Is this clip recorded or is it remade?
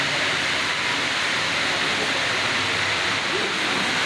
recorded